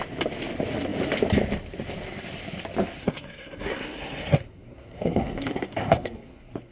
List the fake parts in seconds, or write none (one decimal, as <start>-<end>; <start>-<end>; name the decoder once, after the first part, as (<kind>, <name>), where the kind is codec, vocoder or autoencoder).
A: 3.0-6.7 (codec, SNAC)